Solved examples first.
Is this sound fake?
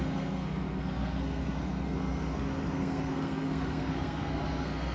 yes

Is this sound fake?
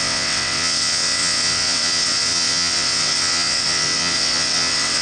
yes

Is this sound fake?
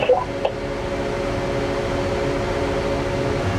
no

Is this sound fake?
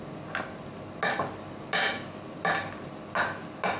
no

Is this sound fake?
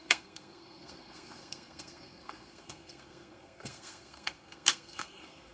yes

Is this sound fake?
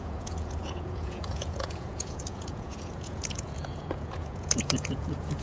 yes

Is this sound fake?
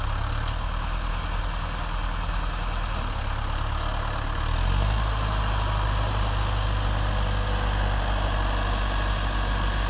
no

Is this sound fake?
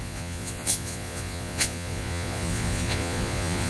yes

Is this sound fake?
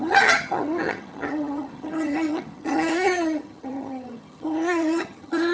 yes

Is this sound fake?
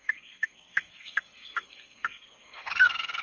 yes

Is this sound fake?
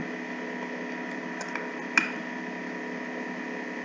no